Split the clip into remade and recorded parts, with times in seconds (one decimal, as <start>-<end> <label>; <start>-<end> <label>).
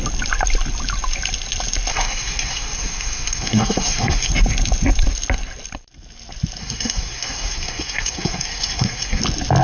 0.0-1.9 recorded; 1.9-4.3 remade; 4.3-6.6 recorded; 6.6-9.2 remade; 9.2-9.6 recorded